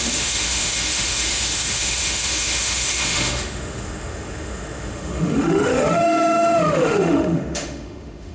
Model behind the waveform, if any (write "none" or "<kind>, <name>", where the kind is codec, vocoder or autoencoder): autoencoder, DAC-VAE